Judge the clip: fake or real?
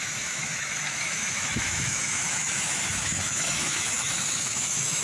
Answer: fake